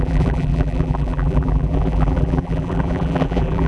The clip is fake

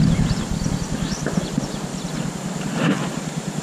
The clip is fake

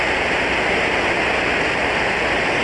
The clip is real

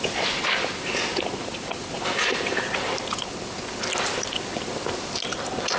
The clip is real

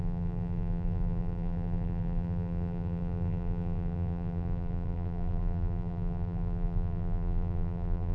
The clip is fake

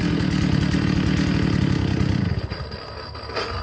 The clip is real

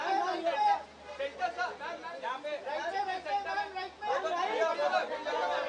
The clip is real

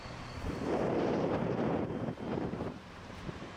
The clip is fake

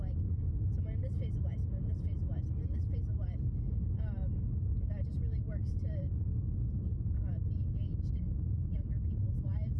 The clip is real